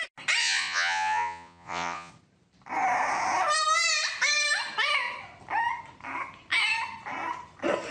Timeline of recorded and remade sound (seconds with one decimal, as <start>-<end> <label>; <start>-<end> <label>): 0.0-0.4 recorded; 0.4-2.1 remade; 2.1-7.9 recorded